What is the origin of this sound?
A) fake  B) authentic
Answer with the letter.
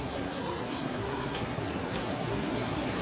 A